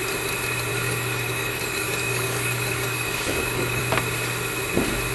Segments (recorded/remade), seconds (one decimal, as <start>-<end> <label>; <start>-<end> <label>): 0.0-0.7 recorded; 0.7-3.8 remade; 3.8-5.1 recorded